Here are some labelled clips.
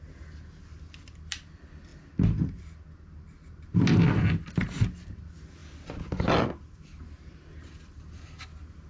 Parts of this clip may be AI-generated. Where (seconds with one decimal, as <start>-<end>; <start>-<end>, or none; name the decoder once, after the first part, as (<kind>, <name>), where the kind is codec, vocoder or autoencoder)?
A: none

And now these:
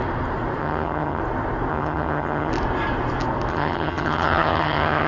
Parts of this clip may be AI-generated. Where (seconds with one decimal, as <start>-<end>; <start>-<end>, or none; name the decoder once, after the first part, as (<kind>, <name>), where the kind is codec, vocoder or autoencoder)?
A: 0.6-1.2 (vocoder, HiFi-GAN); 1.7-2.5; 3.5-5.1

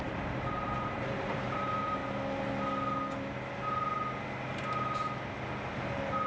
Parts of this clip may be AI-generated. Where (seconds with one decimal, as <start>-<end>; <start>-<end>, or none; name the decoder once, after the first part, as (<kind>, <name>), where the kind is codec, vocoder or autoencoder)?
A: 0.0-2.0 (vocoder, BigVGAN v2); 5.8-6.3